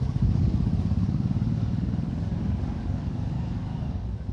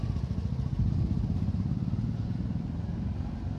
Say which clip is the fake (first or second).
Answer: first